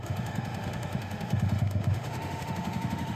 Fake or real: fake